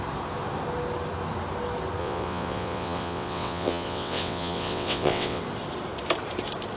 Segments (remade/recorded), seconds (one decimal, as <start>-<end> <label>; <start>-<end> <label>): 0.0-2.0 recorded; 2.0-5.4 remade; 5.4-6.8 recorded

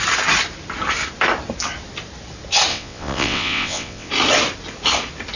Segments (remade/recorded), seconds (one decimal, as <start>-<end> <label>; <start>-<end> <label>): 0.0-2.7 recorded; 2.7-4.1 remade; 4.1-5.4 recorded

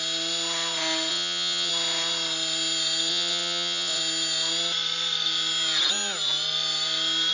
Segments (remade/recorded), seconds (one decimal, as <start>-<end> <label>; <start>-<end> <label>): 0.0-1.1 recorded; 1.1-1.7 remade; 1.7-3.1 recorded; 3.1-4.0 remade; 4.0-7.3 recorded

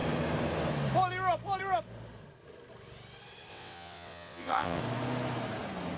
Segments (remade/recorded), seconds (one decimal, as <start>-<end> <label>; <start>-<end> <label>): 0.0-3.5 recorded; 3.5-4.8 remade; 4.8-6.0 recorded